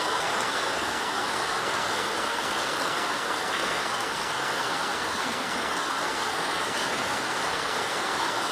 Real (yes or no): no